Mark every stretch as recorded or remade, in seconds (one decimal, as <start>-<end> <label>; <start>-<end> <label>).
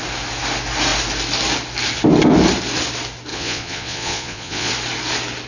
0.0-3.3 recorded; 3.3-4.7 remade; 4.7-5.5 recorded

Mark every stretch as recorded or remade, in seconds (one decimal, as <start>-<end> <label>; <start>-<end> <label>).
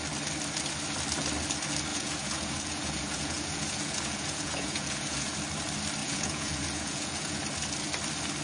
0.0-1.9 recorded; 1.9-5.4 remade; 5.4-6.0 recorded; 6.0-7.4 remade; 7.4-8.4 recorded